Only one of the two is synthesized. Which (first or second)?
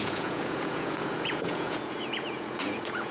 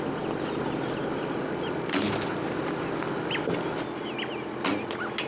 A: first